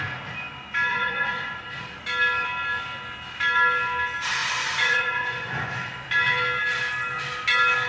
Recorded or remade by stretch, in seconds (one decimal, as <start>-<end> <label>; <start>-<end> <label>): 0.0-0.9 recorded; 0.9-1.6 remade; 1.6-4.4 recorded; 4.4-5.7 remade; 5.7-7.9 recorded